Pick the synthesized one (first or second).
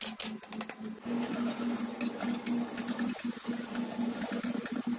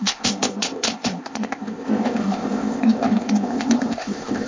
second